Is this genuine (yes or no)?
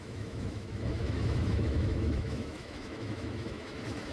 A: no